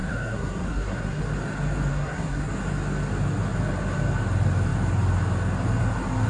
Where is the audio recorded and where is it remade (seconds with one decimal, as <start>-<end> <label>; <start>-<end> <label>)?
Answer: 0.0-1.2 remade; 1.2-1.9 recorded; 1.9-2.5 remade; 2.5-6.3 recorded